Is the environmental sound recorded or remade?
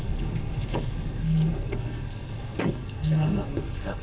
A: remade